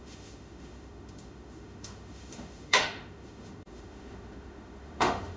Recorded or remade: remade